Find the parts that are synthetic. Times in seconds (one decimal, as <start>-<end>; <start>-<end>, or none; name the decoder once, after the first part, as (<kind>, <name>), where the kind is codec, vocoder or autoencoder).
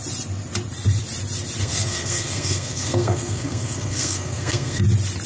1.6-4.8 (codec, SNAC)